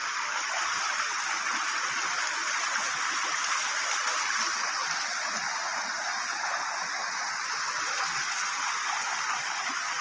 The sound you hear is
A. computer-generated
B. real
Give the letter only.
B